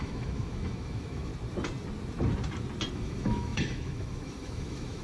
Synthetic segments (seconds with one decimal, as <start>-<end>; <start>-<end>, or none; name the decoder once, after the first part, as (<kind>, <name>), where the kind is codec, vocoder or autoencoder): 0.0-1.3 (autoencoder, DAC-VAE); 2.9-5.0